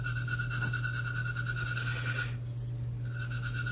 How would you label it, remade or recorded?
recorded